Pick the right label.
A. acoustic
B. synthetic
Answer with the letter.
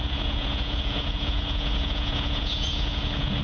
B